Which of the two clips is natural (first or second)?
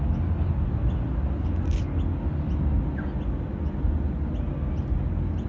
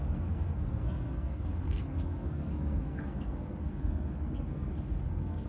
first